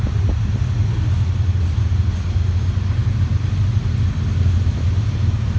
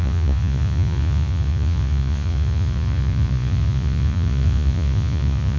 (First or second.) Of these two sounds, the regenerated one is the second